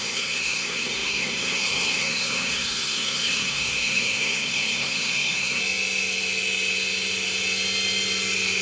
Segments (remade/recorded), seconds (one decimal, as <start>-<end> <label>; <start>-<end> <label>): 0.0-5.6 remade; 5.6-8.6 recorded